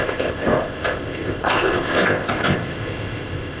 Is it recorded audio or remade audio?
remade